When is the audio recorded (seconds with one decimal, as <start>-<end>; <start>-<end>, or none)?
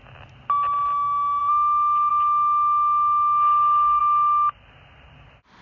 0.0-5.6